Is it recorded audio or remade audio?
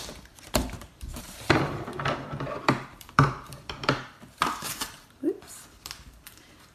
remade